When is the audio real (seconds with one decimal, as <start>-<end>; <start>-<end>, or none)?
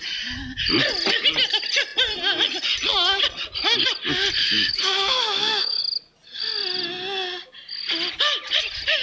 0.0-4.4; 5.8-9.0